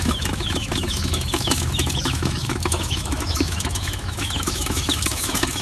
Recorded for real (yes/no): no